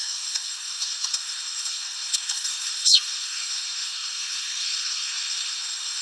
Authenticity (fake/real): fake